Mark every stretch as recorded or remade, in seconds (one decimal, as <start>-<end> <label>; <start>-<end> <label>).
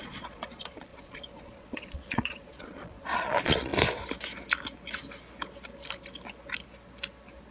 0.0-3.7 remade; 3.7-7.5 recorded